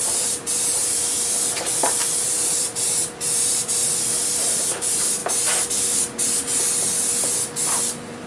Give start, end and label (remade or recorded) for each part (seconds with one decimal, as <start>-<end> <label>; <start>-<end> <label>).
0.0-5.2 remade; 5.2-7.8 recorded; 7.8-8.3 remade